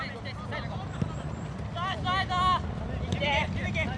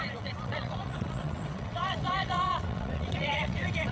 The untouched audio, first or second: first